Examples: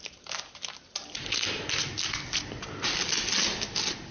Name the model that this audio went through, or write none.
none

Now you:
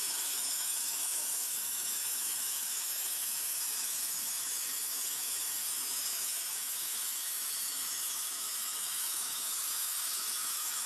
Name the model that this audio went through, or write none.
autoencoder, DAC-VAE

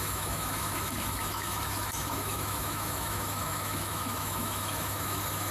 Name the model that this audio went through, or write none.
autoencoder, DAC-VAE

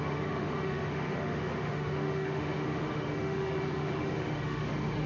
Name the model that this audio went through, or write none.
autoencoder, DAC-VAE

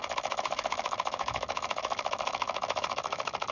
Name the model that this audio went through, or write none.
autoencoder, DAC-VAE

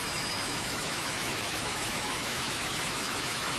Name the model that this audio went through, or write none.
autoencoder, DAC-VAE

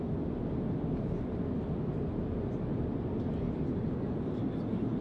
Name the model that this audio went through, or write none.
none